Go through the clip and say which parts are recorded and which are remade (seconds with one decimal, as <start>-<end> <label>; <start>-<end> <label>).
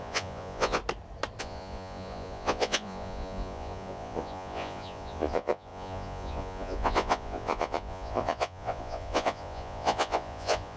0.0-0.8 remade; 0.8-1.4 recorded; 1.4-10.8 remade